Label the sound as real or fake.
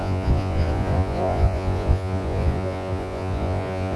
fake